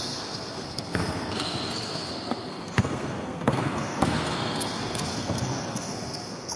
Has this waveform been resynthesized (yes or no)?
yes